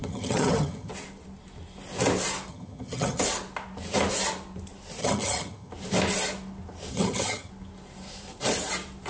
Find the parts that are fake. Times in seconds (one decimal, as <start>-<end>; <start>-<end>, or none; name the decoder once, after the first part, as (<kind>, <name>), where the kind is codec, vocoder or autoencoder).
0.0-0.9 (vocoder, HiFi-GAN); 2.5-3.2; 5.0-5.7; 6.9-7.5